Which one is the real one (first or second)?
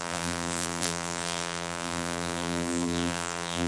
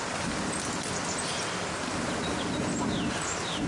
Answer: second